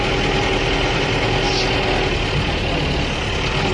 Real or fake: real